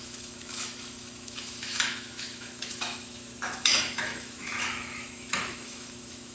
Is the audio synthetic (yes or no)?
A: yes